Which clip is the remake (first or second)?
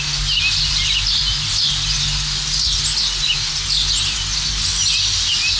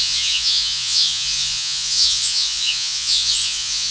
second